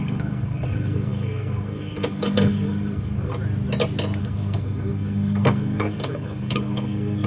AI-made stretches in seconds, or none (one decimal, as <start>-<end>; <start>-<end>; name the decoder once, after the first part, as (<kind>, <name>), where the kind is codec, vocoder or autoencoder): 0.0-3.3 (codec, SNAC); 4.2-7.3